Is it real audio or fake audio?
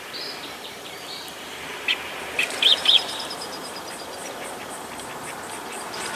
fake